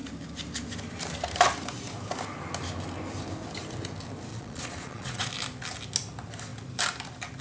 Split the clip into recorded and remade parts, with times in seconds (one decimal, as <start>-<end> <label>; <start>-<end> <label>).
0.0-4.3 recorded; 4.3-5.3 remade; 5.3-7.4 recorded